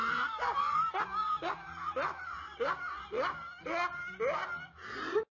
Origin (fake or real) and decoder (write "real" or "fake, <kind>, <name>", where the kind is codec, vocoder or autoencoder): real